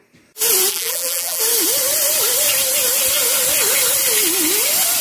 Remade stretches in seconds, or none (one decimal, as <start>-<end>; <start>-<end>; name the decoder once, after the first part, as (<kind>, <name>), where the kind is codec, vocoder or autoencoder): 0.7-1.4 (vocoder, BigVGAN v2)